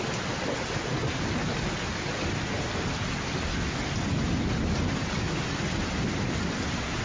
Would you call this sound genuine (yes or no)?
yes